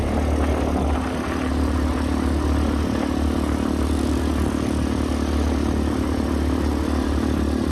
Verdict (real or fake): real